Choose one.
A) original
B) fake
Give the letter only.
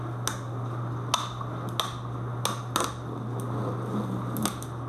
A